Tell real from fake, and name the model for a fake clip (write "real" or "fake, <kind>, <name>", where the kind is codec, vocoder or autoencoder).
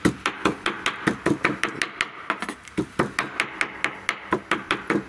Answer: real